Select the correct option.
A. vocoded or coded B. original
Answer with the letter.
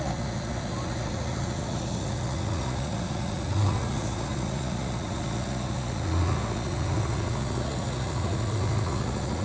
A